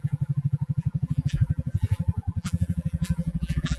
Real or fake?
fake